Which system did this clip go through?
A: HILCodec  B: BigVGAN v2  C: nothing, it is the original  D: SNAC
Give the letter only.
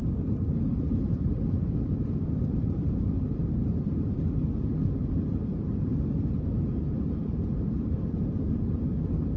B